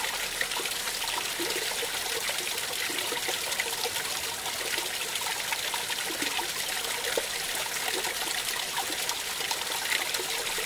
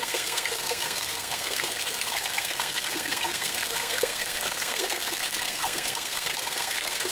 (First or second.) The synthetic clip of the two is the second